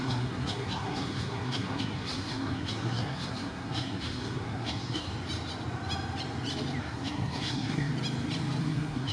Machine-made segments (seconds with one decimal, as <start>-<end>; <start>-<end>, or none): 0.0-5.1; 6.8-7.9; 8.6-9.1